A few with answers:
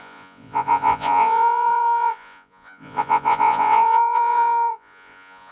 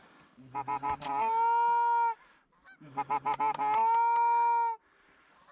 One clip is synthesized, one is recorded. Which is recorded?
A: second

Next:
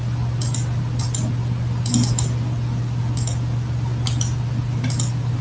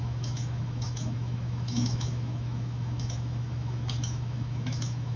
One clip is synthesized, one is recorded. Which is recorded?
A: first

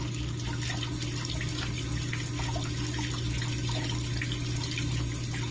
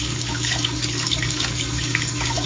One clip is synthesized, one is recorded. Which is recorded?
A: first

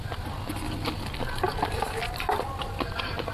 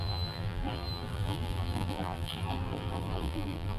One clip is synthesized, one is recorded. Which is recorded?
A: first